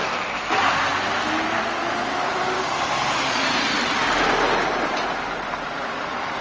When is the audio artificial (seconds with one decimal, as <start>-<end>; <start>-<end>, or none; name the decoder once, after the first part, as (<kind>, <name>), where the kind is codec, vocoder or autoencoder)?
0.0-0.5 (autoencoder, DAC-VAE)